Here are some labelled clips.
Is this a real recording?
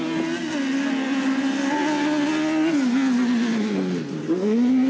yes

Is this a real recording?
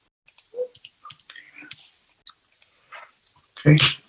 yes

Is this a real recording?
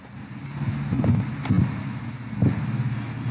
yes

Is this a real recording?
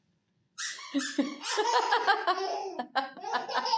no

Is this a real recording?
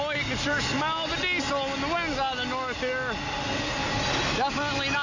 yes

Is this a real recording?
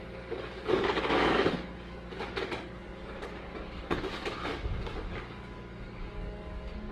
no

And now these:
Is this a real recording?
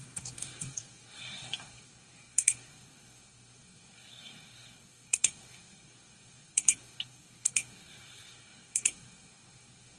no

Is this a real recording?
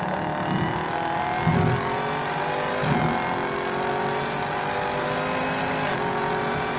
yes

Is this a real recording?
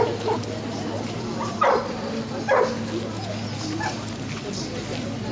yes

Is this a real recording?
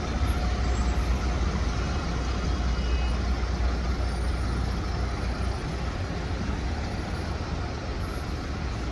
yes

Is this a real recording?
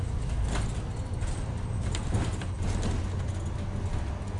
yes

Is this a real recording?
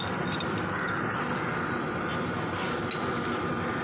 no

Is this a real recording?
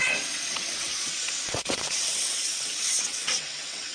no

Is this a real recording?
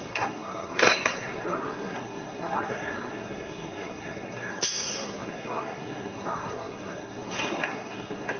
no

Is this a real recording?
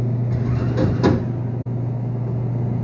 yes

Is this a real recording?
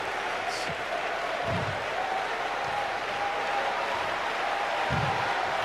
no